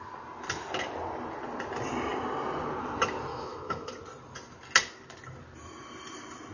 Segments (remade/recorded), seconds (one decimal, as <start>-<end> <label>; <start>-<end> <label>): 0.0-3.3 recorded; 3.3-3.9 remade; 3.9-6.5 recorded